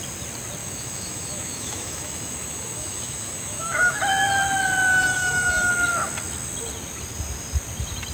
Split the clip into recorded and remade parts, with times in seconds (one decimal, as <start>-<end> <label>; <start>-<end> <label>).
0.0-0.6 recorded; 0.6-4.0 remade; 4.0-4.9 recorded; 4.9-5.7 remade; 5.7-8.1 recorded